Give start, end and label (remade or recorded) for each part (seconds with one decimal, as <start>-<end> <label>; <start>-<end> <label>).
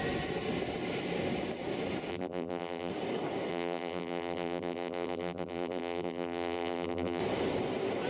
0.0-2.1 recorded; 2.1-2.9 remade; 2.9-3.5 recorded; 3.5-7.2 remade; 7.2-8.1 recorded